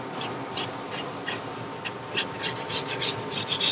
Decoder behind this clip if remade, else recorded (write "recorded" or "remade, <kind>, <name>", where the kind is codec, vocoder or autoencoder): recorded